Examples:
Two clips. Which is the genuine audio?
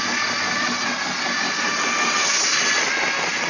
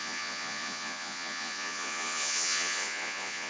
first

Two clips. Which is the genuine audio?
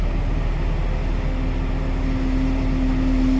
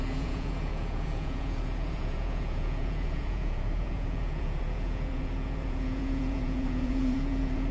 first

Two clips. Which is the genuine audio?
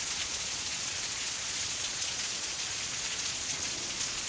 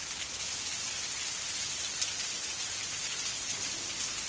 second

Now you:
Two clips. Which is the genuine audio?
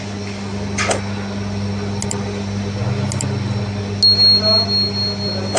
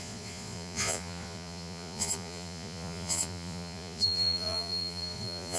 first